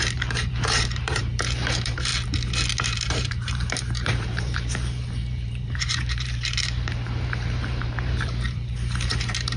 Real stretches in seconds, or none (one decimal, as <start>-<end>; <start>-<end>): 2.1-2.8